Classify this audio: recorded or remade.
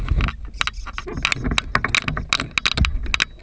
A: recorded